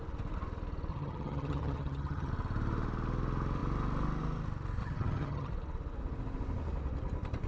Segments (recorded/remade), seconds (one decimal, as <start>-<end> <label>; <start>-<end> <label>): 0.0-0.9 recorded; 0.9-2.3 remade; 2.3-4.8 recorded; 4.8-5.5 remade; 5.5-7.5 recorded